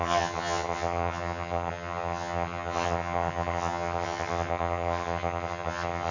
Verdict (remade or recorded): remade